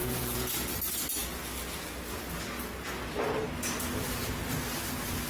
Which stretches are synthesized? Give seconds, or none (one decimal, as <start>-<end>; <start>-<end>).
0.0-0.5